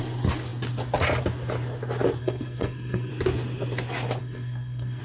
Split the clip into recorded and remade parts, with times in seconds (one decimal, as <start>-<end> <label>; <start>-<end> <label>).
0.0-2.2 recorded; 2.2-3.1 remade; 3.1-4.2 recorded; 4.2-5.0 remade